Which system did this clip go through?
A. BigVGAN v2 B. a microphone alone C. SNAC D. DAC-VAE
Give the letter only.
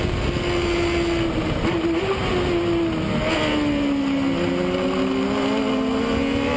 B